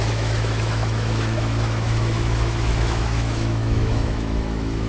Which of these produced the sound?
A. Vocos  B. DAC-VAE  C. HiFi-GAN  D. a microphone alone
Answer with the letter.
B